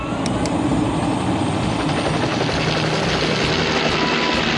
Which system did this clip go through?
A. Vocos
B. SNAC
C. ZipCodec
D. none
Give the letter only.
D